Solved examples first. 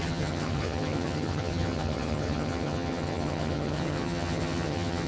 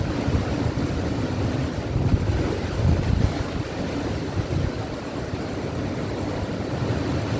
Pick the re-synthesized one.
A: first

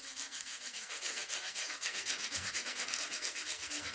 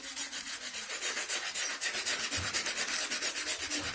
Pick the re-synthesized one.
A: first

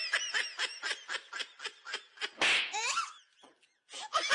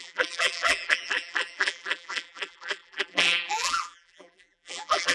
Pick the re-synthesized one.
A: second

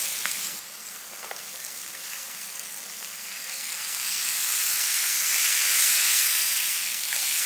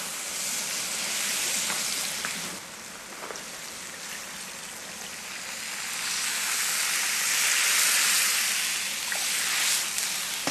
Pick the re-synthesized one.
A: first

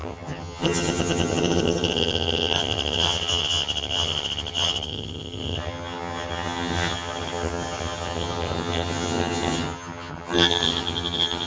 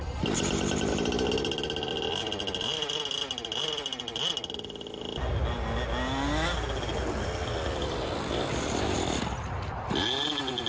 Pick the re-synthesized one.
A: first